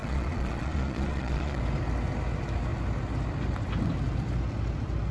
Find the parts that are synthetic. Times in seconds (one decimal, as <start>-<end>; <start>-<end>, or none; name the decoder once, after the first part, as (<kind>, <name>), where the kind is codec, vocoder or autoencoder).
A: 0.0-1.6 (vocoder, Vocos)